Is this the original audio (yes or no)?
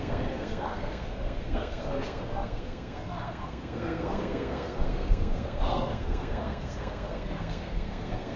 no